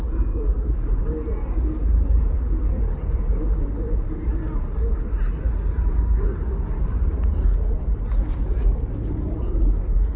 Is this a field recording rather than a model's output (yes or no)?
yes